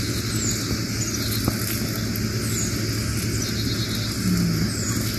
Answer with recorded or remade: recorded